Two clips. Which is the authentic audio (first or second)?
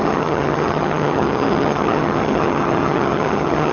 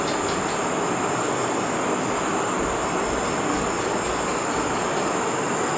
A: second